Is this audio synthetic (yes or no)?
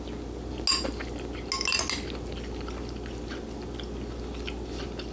no